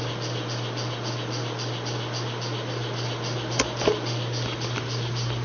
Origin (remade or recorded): recorded